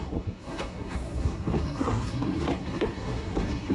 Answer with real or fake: fake